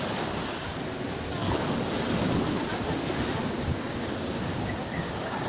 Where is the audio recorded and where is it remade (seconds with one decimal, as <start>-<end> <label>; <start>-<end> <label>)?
0.0-3.7 recorded; 3.7-5.5 remade